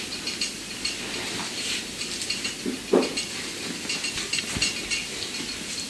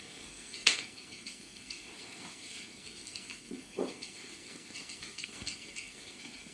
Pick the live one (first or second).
first